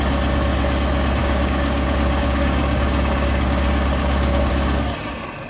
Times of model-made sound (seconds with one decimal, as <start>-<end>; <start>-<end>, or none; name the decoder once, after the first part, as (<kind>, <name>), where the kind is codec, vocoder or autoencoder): 1.2-4.5 (codec, DAC)